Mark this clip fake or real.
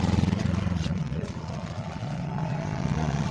fake